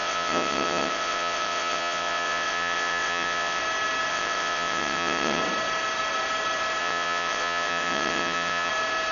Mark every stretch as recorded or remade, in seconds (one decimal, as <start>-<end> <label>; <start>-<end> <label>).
0.0-3.6 remade; 3.6-4.1 recorded; 4.1-5.4 remade; 5.4-6.8 recorded; 6.8-8.7 remade; 8.7-9.1 recorded